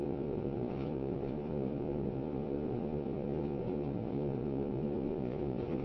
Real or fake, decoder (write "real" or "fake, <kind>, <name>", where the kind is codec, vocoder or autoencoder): fake, vocoder, Vocos